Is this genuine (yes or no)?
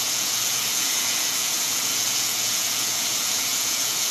no